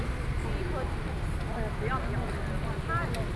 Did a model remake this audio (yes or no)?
no